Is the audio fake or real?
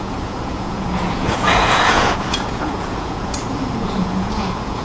fake